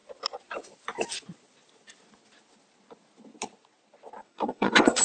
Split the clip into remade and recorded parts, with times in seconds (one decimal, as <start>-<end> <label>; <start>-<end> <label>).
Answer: 0.0-4.2 recorded; 4.2-5.0 remade